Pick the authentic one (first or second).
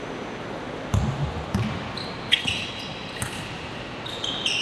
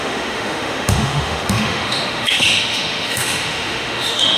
first